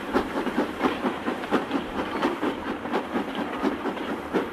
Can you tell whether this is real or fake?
fake